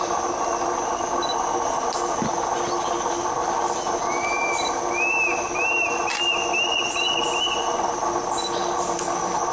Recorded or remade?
recorded